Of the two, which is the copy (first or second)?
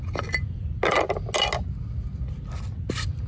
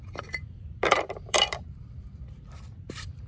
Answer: second